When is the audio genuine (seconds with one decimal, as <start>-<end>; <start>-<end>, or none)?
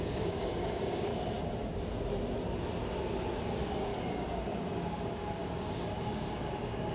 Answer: 1.1-3.4; 3.9-4.4